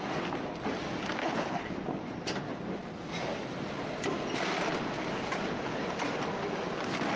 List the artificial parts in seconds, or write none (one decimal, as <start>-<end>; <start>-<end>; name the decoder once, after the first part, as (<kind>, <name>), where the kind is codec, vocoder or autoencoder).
1.2-1.7 (codec, HILCodec)